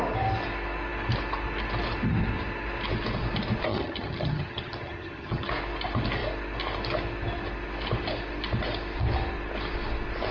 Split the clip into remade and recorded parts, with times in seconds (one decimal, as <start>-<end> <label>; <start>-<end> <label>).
0.0-3.7 recorded; 3.7-5.5 remade; 5.5-10.3 recorded